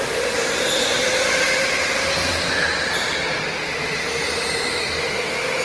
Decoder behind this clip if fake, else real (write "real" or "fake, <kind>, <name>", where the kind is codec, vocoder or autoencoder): real